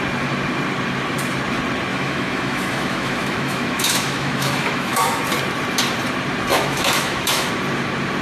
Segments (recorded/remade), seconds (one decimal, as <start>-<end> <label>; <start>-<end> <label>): 0.0-1.9 recorded; 1.9-5.2 remade; 5.2-6.5 recorded; 6.5-7.5 remade; 7.5-8.2 recorded